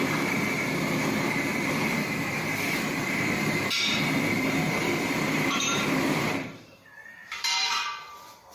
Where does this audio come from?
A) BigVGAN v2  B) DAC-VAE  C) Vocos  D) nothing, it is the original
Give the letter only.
A